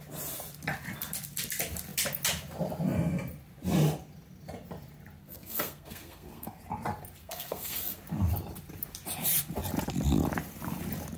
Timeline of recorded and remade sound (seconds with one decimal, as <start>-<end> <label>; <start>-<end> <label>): 0.0-5.2 recorded; 5.2-6.6 remade; 6.6-7.2 recorded; 7.2-8.0 remade; 8.0-11.2 recorded